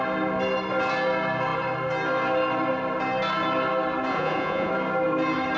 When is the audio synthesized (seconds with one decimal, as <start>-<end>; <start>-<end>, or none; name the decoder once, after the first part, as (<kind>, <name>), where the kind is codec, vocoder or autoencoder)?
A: 4.1-4.7 (vocoder, Vocos)

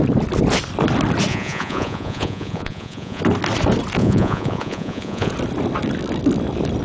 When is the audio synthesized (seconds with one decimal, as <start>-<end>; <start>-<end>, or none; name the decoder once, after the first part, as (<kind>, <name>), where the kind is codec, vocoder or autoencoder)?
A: 1.3-3.2 (vocoder, Vocos); 4.0-5.3